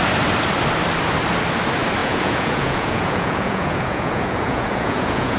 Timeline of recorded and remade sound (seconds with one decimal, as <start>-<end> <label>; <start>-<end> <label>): 0.0-2.0 recorded; 2.0-5.4 remade